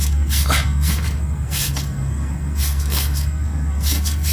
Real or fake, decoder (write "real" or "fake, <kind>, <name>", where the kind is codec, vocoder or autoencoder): fake, codec, SNAC